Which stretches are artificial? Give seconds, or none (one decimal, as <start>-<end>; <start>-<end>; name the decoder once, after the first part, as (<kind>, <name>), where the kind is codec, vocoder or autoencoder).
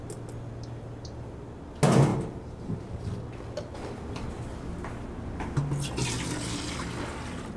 2.1-2.8 (vocoder, BigVGAN v2)